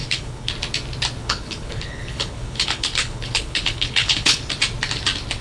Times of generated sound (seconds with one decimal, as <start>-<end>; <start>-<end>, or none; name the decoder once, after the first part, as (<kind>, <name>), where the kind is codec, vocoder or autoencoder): 0.0-0.5 (codec, HILCodec); 1.2-4.4